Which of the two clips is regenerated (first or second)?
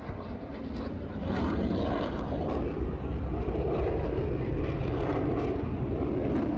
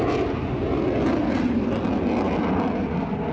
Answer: first